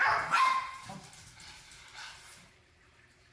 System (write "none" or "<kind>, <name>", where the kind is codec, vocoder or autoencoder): vocoder, BigVGAN v2